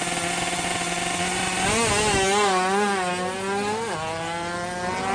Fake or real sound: real